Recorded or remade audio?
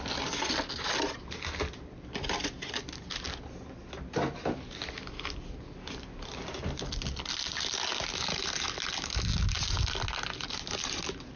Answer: recorded